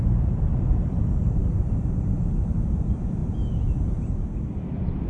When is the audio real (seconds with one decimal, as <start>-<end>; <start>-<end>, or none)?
0.0-5.1